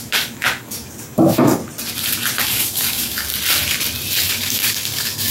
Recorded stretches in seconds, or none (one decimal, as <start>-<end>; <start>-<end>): 1.6-2.4; 3.3-4.3